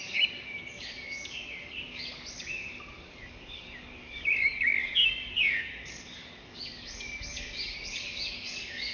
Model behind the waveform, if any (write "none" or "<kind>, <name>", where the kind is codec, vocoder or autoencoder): codec, DAC